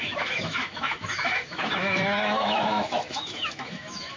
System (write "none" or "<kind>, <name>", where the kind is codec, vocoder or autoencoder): autoencoder, DAC-VAE